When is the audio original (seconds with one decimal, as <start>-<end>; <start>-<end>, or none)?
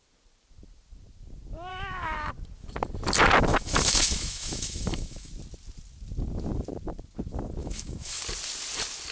0.0-1.7; 2.3-3.5; 5.3-7.6; 8.2-9.1